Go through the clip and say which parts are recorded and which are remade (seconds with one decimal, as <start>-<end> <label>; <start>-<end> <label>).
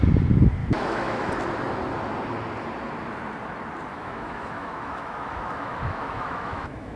0.0-0.6 recorded; 0.6-1.3 remade; 1.3-3.9 recorded; 3.9-7.0 remade